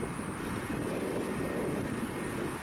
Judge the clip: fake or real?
real